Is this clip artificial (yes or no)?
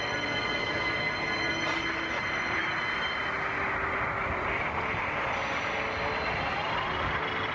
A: no